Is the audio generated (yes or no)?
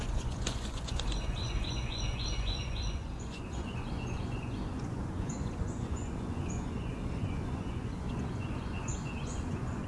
yes